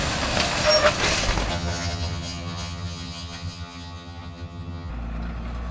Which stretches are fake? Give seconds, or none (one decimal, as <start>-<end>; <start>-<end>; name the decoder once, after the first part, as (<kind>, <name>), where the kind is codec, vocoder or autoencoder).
1.5-4.9 (vocoder, HiFi-GAN)